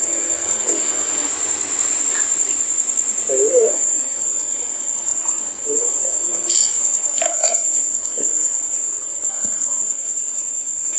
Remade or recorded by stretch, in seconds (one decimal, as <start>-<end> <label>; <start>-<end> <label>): 0.0-1.3 remade; 1.3-3.5 recorded; 3.5-11.0 remade